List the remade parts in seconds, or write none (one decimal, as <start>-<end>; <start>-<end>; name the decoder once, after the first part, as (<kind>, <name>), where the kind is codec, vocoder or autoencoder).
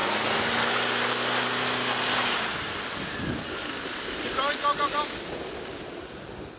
none